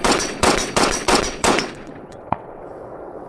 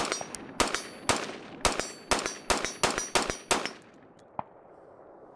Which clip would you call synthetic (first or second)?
first